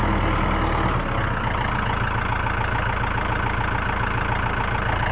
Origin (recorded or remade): recorded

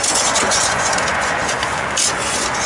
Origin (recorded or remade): remade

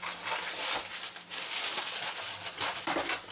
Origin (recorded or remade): recorded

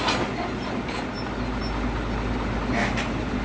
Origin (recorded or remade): recorded